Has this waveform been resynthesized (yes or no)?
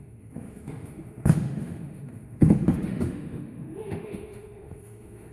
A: yes